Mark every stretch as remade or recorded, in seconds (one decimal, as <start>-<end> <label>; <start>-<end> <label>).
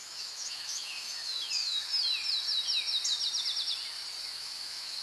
0.0-1.9 remade; 1.9-4.2 recorded; 4.2-5.0 remade